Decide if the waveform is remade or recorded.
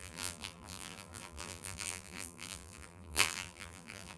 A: remade